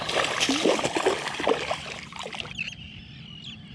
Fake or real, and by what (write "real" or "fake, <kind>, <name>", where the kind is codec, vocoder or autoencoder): real